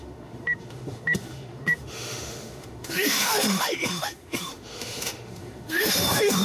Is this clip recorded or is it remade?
remade